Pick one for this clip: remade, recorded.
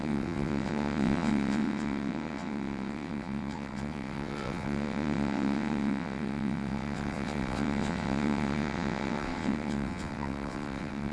remade